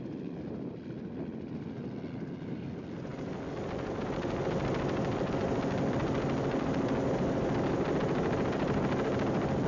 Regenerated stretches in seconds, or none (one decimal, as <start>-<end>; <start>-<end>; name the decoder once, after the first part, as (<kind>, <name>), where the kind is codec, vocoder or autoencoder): none